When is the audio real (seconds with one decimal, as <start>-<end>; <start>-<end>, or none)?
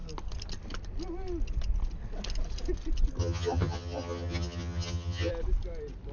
0.0-3.2; 5.3-6.1